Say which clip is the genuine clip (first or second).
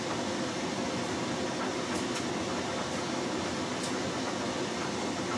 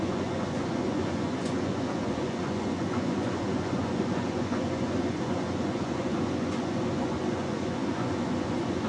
first